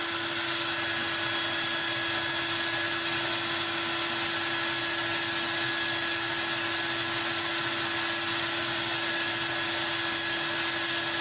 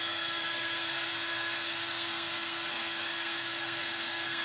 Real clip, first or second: first